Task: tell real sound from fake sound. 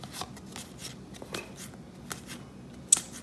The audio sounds real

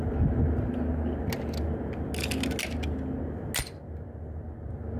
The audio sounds real